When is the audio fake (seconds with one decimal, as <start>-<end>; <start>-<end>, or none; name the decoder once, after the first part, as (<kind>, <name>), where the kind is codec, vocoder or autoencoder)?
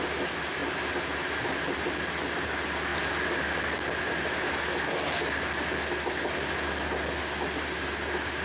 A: none